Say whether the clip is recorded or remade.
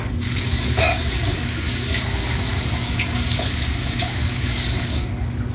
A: remade